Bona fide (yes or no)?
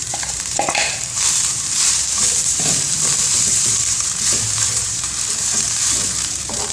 no